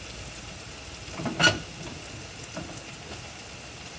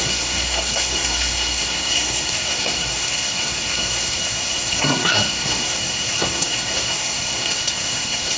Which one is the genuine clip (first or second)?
first